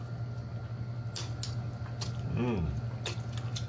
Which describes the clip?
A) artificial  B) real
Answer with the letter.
B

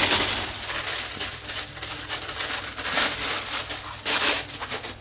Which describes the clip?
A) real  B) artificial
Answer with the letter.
A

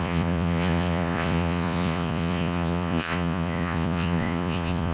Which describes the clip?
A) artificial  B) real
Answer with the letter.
A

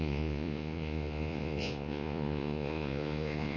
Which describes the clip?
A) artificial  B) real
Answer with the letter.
A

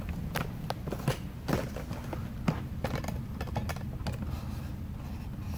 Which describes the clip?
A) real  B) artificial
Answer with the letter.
A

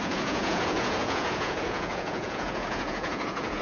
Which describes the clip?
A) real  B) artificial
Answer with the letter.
B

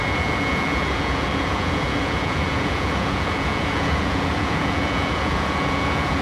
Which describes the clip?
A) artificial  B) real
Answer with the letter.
A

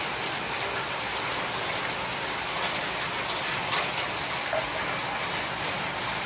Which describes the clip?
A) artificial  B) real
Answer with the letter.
B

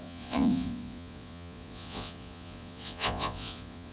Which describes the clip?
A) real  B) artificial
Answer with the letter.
B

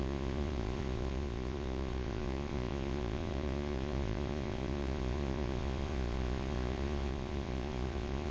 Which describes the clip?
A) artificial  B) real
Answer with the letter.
A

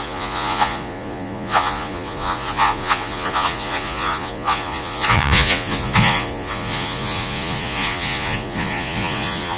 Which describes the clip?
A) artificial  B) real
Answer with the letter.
A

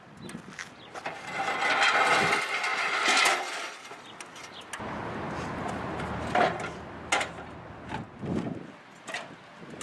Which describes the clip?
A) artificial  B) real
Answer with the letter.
B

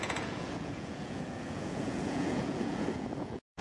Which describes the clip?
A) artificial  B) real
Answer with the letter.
A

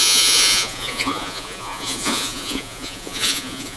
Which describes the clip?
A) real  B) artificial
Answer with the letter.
B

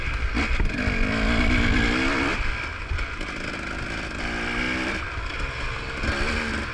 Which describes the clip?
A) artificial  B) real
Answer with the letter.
B